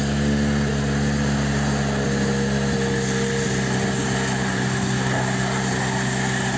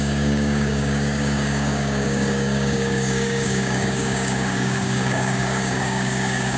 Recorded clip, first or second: first